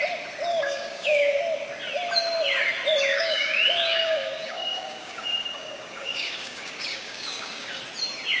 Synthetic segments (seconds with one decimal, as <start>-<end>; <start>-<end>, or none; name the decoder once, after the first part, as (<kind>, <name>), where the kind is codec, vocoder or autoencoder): 0.5-1.4 (codec, DAC); 3.1-7.8